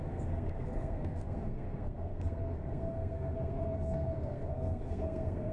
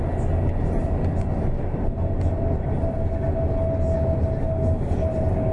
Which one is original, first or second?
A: second